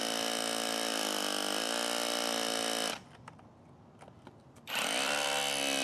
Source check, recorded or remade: recorded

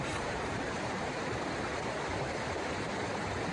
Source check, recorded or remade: remade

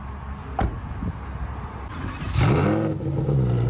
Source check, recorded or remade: recorded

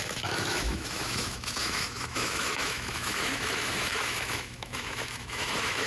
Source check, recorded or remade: remade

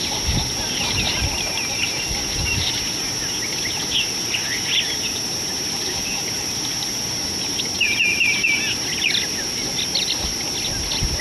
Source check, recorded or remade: recorded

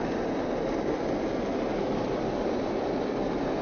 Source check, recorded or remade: remade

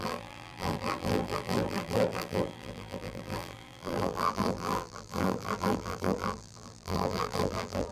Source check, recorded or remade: remade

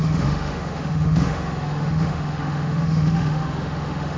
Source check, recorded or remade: remade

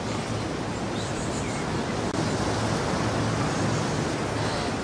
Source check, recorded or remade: recorded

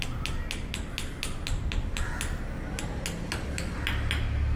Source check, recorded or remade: recorded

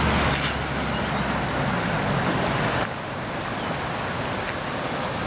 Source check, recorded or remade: recorded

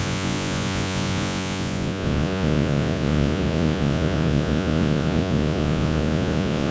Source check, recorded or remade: remade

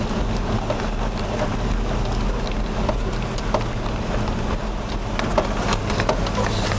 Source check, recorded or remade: recorded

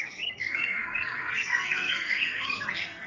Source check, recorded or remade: remade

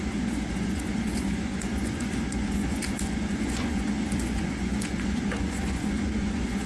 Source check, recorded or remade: remade